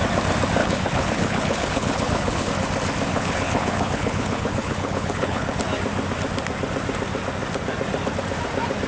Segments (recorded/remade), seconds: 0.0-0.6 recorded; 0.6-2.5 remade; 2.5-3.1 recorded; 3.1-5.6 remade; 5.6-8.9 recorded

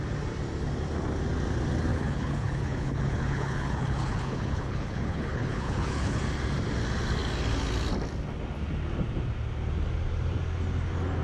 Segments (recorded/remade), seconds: 0.0-1.9 recorded; 1.9-6.2 remade; 6.2-11.2 recorded